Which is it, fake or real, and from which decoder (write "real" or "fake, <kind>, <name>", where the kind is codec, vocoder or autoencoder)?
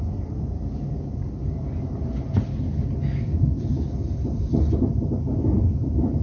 fake, vocoder, BigVGAN v2